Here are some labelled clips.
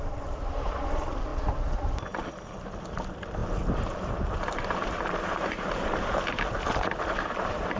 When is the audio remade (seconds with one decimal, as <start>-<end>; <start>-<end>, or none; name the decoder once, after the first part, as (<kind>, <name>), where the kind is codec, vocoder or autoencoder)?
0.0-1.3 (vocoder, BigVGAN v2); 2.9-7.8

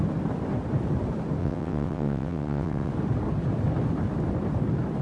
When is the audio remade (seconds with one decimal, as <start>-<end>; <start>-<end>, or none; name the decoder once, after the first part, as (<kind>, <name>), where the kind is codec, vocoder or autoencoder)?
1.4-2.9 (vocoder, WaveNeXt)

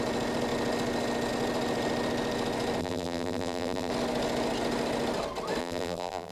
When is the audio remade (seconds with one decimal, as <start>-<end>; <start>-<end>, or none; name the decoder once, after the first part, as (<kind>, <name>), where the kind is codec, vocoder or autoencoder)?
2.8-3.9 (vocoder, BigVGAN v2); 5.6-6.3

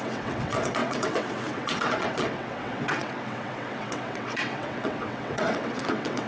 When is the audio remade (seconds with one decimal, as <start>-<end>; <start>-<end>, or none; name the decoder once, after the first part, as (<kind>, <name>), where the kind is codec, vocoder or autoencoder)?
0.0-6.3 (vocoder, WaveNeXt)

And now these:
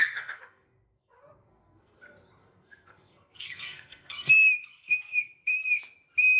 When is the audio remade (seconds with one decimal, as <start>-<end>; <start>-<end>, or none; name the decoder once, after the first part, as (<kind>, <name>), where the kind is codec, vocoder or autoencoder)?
0.0-2.0 (codec, SNAC); 2.4-5.8

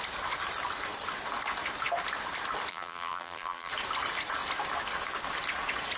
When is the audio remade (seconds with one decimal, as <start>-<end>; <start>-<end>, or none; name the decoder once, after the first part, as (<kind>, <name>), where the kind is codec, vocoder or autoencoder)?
2.7-3.7 (vocoder, BigVGAN v2)

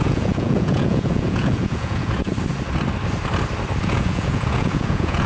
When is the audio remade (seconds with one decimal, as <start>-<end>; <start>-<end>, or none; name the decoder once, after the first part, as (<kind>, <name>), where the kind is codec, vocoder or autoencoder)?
0.0-2.3 (vocoder, Vocos); 3.8-5.3

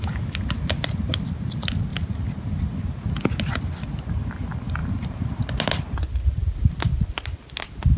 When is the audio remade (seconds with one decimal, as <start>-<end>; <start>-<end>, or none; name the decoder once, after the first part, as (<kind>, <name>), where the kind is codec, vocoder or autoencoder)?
1.9-2.6 (vocoder, BigVGAN v2); 4.8-5.5; 6.1-6.6